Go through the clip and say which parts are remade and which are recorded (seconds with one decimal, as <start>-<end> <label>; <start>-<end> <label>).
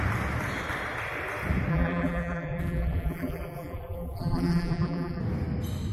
0.0-1.7 recorded; 1.7-5.2 remade; 5.2-5.9 recorded